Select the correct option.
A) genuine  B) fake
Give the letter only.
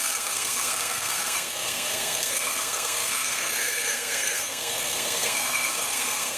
B